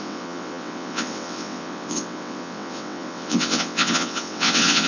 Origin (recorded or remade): remade